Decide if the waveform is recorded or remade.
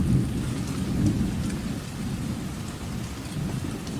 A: recorded